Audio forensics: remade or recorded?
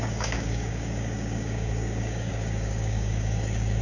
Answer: remade